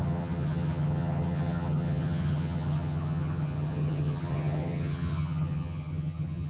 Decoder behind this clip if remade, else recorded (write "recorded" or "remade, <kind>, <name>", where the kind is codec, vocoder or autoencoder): remade, vocoder, HiFi-GAN